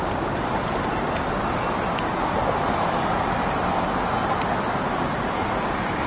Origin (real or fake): real